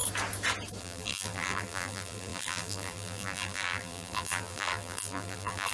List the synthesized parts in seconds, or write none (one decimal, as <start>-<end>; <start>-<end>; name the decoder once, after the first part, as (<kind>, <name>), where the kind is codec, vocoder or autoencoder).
0.8-5.7 (vocoder, BigVGAN v2)